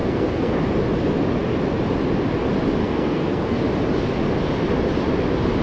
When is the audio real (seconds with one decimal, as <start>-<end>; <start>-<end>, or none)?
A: 0.6-2.8; 3.6-5.6